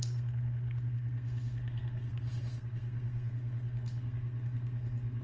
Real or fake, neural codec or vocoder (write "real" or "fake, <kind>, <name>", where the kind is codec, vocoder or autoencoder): fake, codec, SNAC